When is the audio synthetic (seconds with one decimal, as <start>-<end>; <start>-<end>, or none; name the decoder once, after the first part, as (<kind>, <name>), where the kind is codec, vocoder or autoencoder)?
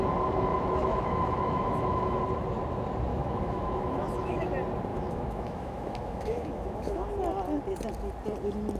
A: 0.5-2.2 (autoencoder, DAC-VAE); 3.1-4.5; 4.9-7.1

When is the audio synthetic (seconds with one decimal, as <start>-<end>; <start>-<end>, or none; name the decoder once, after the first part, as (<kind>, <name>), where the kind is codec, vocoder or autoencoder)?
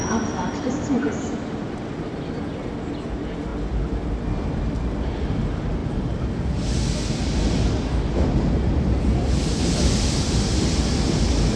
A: none